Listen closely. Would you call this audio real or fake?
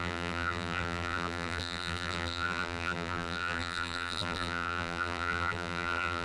fake